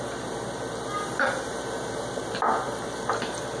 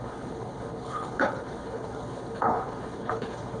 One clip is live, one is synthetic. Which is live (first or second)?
first